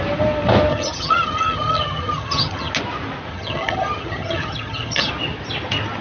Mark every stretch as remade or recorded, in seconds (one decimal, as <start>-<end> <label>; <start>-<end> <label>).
0.0-0.7 recorded; 0.7-2.7 remade; 2.7-3.3 recorded; 3.3-5.1 remade; 5.1-6.0 recorded